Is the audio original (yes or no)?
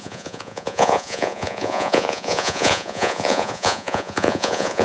no